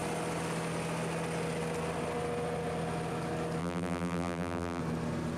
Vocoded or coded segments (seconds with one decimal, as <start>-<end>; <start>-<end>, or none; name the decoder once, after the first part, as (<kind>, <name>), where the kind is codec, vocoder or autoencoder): 3.6-4.8 (vocoder, BigVGAN v2)